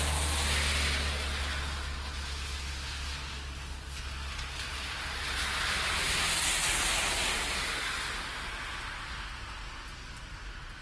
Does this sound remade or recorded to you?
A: recorded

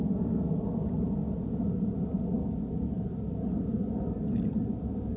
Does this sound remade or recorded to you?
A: recorded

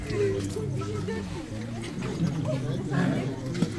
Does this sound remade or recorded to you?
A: recorded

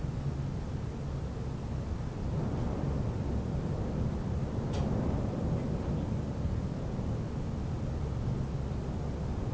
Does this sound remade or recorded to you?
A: recorded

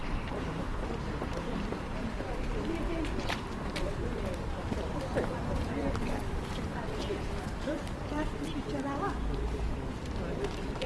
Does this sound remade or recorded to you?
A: remade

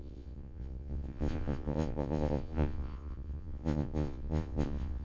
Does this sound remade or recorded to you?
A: remade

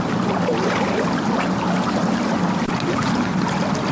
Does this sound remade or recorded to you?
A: recorded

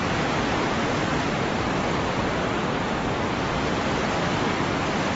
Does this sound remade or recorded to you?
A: remade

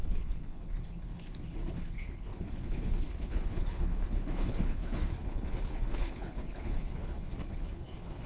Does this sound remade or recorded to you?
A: remade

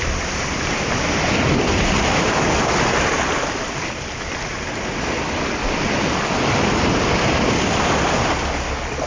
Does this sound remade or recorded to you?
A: recorded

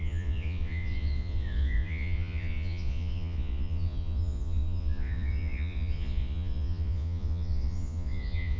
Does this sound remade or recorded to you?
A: remade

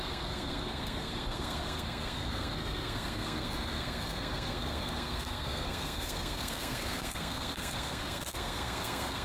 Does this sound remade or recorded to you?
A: remade